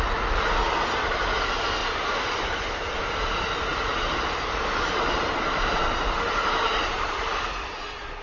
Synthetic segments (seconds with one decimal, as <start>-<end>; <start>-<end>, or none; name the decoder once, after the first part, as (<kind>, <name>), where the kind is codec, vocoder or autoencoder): 1.8-3.0 (vocoder, BigVGAN v2); 3.7-7.3